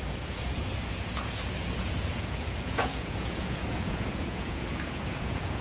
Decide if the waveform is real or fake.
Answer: fake